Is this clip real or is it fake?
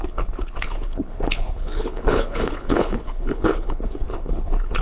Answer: fake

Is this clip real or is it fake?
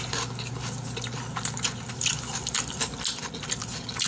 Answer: real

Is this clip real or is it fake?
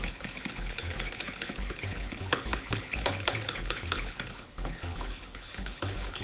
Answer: fake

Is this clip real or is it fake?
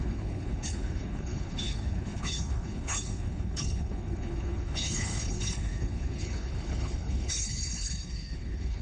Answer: fake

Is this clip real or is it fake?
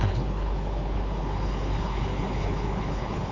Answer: fake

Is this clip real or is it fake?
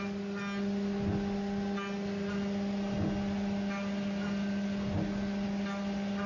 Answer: real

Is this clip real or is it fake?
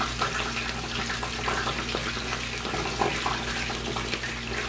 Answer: real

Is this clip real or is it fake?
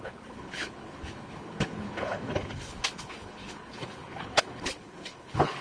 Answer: fake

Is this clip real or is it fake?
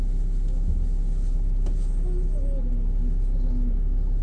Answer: real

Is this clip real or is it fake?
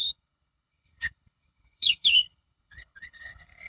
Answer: fake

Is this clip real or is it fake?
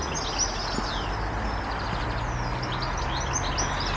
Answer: real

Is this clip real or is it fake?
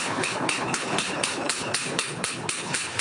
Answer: fake